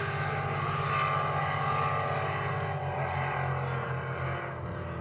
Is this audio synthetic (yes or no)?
no